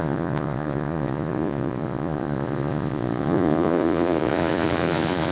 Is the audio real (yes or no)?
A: no